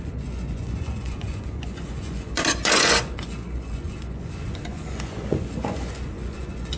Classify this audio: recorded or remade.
remade